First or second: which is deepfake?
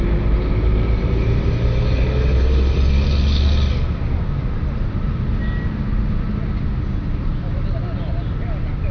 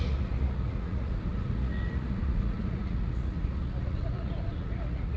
second